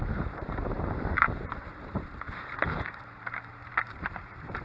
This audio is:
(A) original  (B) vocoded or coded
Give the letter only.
B